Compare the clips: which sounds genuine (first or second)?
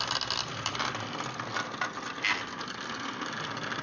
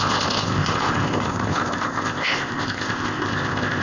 first